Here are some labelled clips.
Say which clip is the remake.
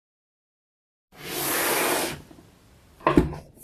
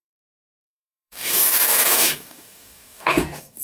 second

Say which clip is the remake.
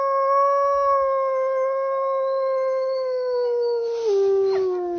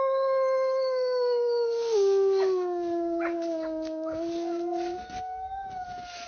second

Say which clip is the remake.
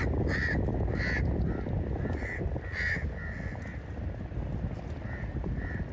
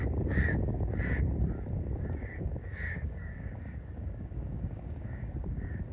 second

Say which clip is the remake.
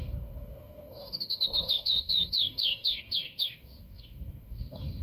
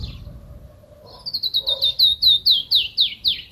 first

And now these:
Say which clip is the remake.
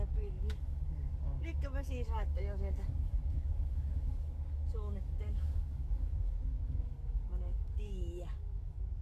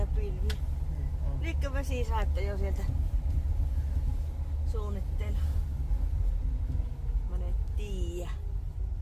first